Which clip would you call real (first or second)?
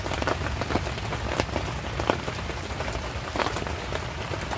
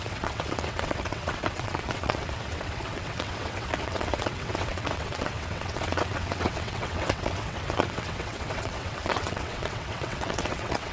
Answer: first